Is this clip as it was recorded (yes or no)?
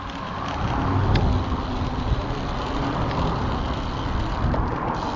yes